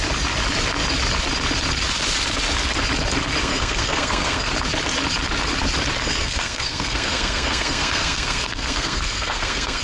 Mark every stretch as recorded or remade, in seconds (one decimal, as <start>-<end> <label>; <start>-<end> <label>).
0.0-3.4 recorded; 3.4-4.5 remade; 4.5-6.0 recorded; 6.0-9.8 remade